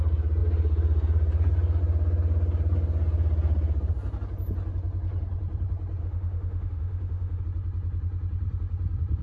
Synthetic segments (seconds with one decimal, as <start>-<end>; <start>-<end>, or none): 6.0-7.4

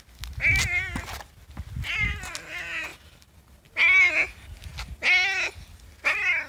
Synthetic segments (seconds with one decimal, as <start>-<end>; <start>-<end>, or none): none